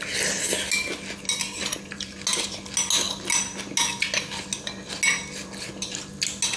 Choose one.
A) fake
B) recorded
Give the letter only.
B